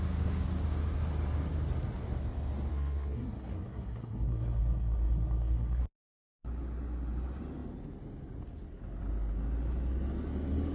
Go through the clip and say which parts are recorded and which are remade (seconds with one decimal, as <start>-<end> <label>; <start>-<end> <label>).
0.0-2.7 recorded; 2.7-5.8 remade; 5.8-10.7 recorded